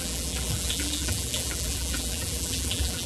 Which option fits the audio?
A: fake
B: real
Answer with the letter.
A